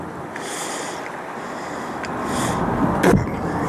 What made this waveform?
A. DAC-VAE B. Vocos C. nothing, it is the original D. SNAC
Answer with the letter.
C